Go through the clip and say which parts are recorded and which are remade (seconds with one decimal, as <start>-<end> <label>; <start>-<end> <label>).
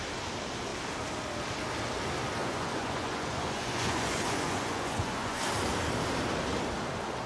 0.0-2.4 recorded; 2.4-5.4 remade; 5.4-7.3 recorded